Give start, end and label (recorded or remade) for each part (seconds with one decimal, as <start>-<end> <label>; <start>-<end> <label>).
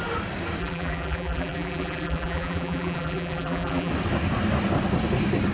0.0-0.6 recorded; 0.6-3.9 remade; 3.9-5.5 recorded